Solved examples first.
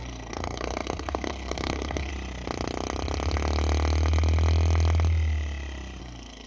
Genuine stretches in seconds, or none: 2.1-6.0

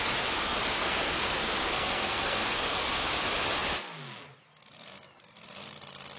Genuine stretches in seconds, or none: 0.0-0.8; 2.9-6.2

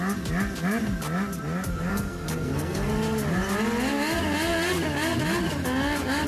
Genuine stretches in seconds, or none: 0.0-1.9; 2.9-6.3

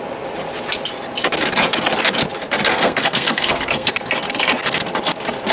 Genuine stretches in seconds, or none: 0.0-2.7; 3.9-5.5

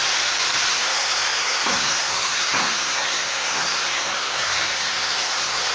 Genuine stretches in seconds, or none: 0.0-0.7

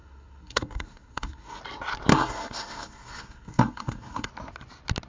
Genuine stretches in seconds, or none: 1.6-2.1; 4.3-5.1

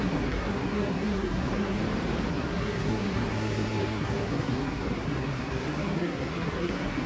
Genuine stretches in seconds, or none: 1.8-2.3

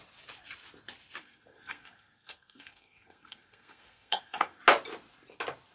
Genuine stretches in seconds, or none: 0.0-1.2; 4.6-5.7